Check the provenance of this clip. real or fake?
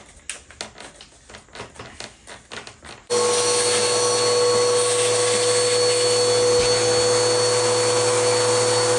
real